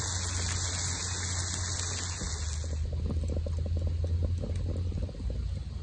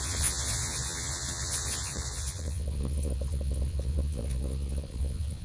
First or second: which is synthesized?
second